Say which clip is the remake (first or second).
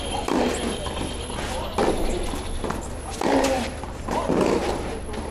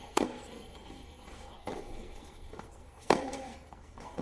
second